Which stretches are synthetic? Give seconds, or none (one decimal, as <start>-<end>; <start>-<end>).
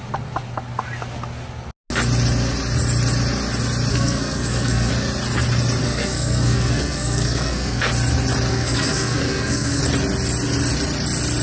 3.9-4.9; 5.8-7.9; 8.5-9.8